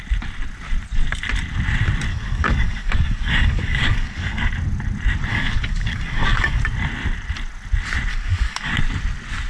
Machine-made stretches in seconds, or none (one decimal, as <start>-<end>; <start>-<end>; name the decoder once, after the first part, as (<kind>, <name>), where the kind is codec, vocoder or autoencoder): 2.1-4.5 (codec, DAC); 5.3-6.6; 8.1-8.7